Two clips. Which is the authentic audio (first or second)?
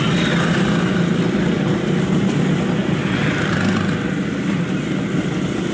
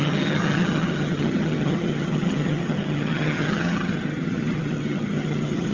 first